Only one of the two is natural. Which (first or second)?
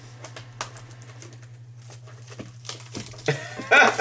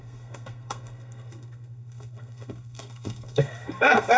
first